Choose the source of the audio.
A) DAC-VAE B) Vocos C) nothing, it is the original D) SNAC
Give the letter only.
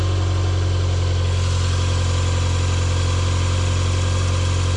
C